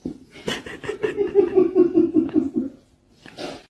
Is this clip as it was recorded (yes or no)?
yes